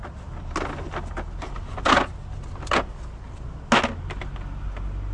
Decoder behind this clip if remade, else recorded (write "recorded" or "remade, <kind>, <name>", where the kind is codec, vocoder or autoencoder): recorded